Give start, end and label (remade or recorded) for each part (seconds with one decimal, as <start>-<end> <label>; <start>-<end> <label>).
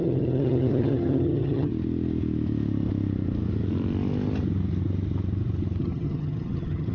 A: 0.0-1.7 remade; 1.7-5.8 recorded; 5.8-6.9 remade